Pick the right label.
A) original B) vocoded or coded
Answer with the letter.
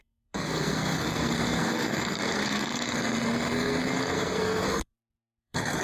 B